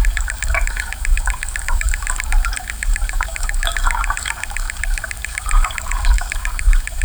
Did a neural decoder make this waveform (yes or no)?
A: yes